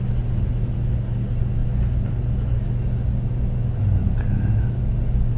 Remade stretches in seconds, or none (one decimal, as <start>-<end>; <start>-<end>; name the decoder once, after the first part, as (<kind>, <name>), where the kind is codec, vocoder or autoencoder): none